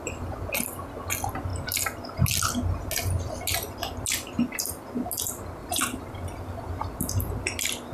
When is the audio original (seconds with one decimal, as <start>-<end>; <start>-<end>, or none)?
0.0-5.6; 6.7-7.9